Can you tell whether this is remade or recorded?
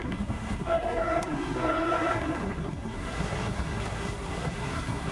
remade